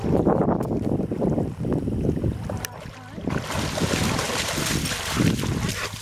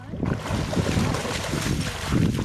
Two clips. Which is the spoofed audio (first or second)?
first